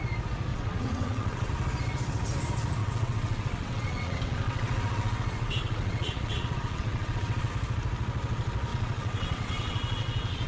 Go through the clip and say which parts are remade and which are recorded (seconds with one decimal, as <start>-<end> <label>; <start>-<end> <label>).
0.0-0.5 recorded; 0.5-1.5 remade; 1.5-2.8 recorded; 2.8-7.5 remade; 7.5-8.7 recorded; 8.7-10.5 remade